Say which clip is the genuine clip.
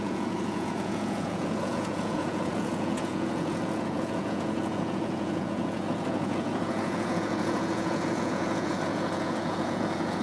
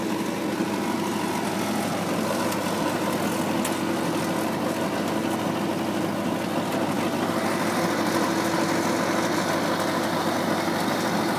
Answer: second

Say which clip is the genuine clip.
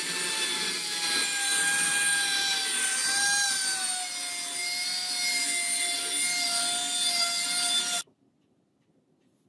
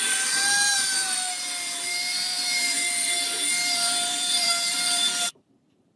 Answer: first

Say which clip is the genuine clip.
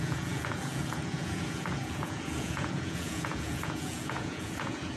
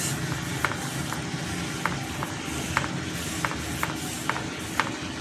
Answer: second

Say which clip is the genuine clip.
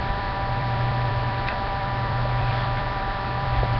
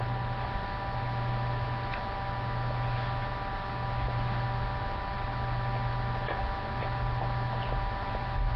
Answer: second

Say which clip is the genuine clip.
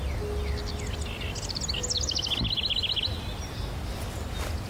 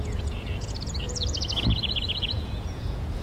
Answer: first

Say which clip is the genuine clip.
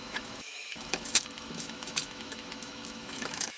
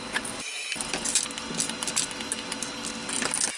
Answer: second